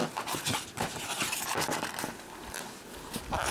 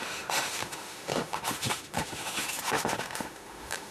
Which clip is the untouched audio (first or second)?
first